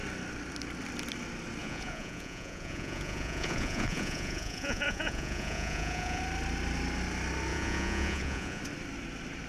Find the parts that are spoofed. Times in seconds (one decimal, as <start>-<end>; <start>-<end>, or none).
1.6-6.2; 7.5-8.6